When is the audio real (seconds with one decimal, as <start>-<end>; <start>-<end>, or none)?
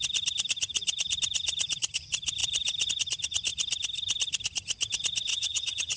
0.0-5.3